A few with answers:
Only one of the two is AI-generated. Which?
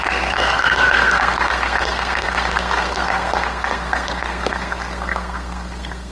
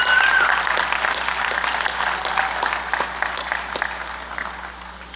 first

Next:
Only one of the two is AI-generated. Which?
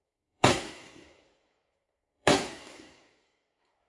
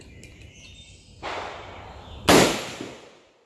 first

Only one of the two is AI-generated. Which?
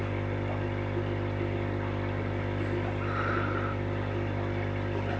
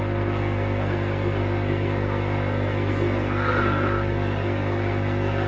second